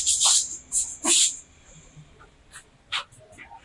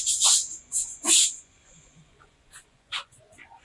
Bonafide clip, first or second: first